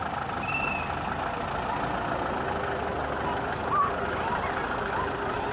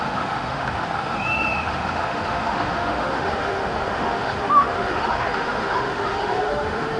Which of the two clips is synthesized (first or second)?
second